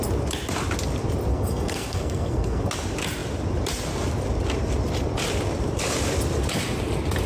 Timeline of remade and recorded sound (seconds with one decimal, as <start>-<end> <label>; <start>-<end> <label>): 0.0-1.3 recorded; 1.3-2.7 remade; 2.7-7.3 recorded